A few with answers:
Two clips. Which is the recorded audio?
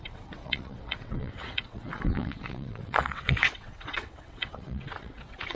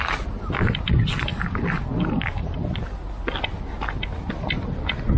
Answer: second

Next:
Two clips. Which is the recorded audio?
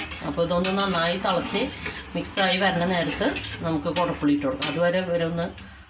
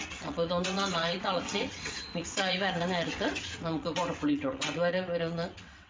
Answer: first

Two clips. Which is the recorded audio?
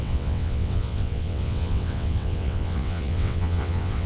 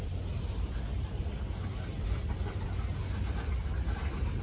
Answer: second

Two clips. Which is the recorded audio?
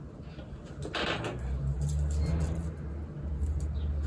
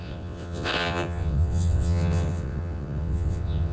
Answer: first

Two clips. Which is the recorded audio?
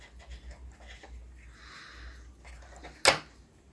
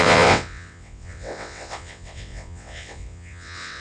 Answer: first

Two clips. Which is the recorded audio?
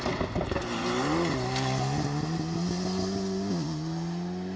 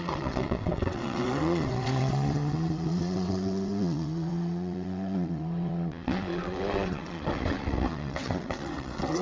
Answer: first